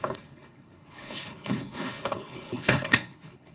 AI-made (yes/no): yes